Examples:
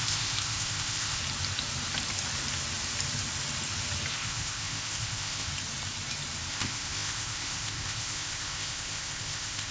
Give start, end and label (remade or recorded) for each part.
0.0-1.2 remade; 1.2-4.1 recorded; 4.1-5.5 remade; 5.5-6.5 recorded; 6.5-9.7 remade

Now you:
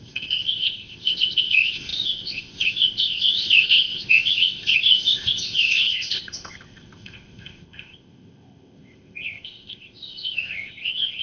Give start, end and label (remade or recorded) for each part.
0.0-11.2 remade

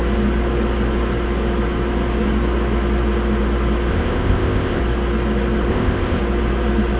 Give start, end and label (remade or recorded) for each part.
0.0-3.9 recorded; 3.9-4.8 remade; 4.8-5.7 recorded; 5.7-6.2 remade; 6.2-7.0 recorded

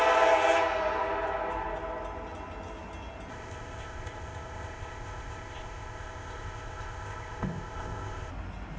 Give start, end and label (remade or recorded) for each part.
0.0-3.3 recorded; 3.3-8.3 remade; 8.3-8.8 recorded

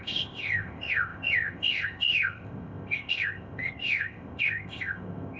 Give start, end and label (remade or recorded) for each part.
0.0-5.4 remade